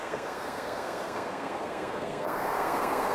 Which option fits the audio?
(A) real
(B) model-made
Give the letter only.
B